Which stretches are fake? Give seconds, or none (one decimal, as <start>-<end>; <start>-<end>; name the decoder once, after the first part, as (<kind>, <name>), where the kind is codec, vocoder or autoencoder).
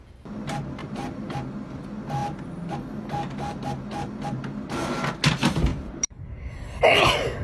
0.8-1.5 (vocoder, BigVGAN v2); 5.7-6.5